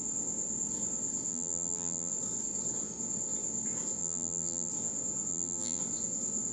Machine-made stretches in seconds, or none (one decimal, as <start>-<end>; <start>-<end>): 1.3-2.1; 4.0-4.7; 5.3-5.8